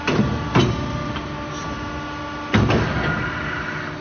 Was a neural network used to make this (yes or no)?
no